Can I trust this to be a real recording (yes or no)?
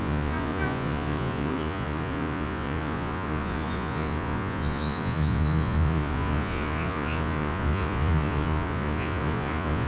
no